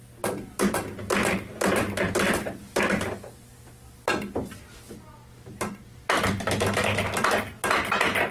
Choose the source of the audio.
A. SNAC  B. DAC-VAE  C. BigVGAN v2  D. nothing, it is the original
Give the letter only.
D